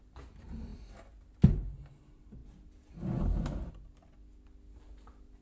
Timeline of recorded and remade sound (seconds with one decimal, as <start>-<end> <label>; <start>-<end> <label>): 0.0-5.4 recorded